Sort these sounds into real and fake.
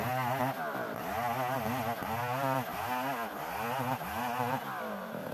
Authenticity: real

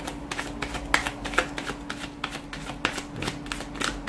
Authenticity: real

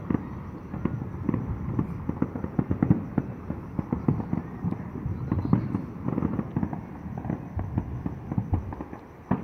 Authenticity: real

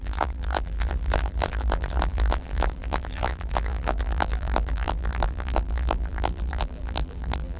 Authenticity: fake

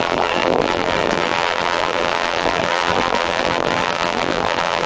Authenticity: fake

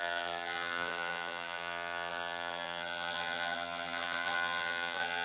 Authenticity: fake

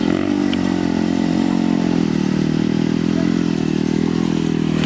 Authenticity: fake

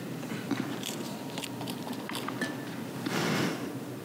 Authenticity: fake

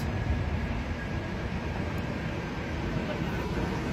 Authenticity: fake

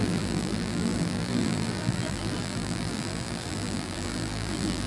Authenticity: fake